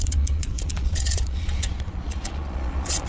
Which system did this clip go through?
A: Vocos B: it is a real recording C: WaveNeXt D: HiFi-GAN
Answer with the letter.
A